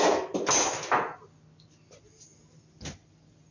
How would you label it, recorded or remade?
recorded